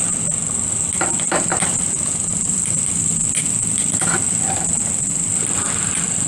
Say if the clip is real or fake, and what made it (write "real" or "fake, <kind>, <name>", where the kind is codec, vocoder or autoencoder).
real